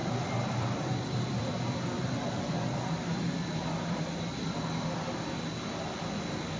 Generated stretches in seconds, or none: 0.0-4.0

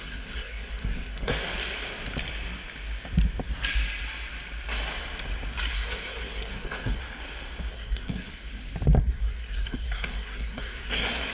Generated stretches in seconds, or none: 0.0-1.3; 5.7-7.0; 7.7-8.3; 9.0-11.3